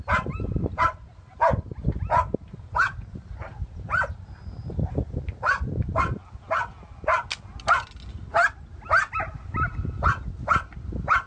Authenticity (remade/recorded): recorded